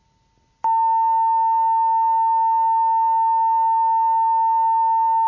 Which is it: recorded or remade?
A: recorded